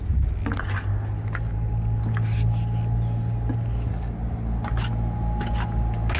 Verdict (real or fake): real